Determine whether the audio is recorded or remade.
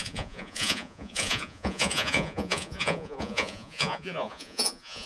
remade